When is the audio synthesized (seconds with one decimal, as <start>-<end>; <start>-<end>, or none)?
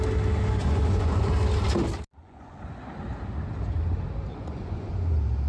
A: 0.6-1.2; 2.2-3.0; 4.3-4.9